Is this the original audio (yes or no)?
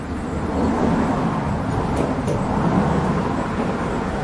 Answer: yes